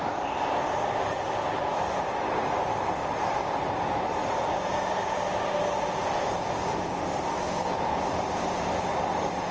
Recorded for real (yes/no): yes